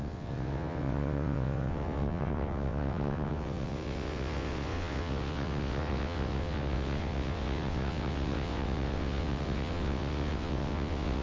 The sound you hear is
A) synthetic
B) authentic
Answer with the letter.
A